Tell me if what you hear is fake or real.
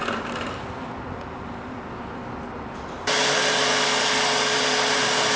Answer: real